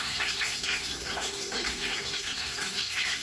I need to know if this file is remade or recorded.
remade